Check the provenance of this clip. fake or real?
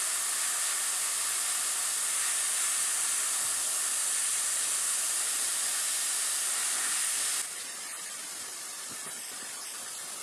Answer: real